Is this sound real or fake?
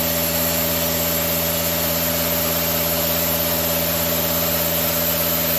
real